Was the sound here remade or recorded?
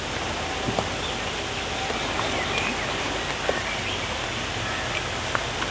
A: recorded